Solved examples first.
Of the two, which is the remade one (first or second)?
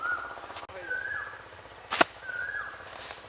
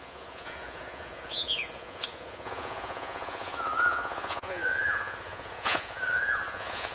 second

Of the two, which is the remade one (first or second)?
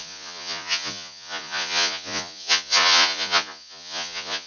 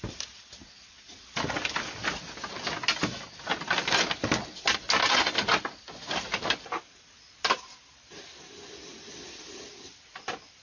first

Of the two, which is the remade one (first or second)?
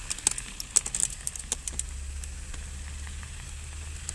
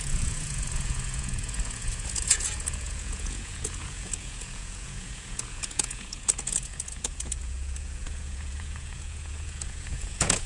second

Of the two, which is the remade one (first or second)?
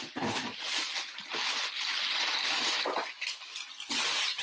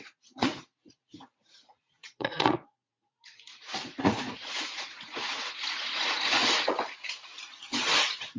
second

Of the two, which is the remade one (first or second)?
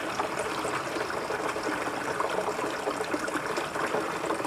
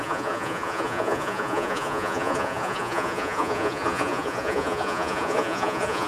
second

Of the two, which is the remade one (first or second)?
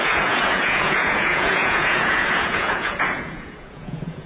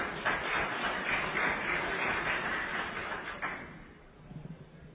first